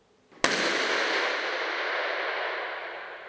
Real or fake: real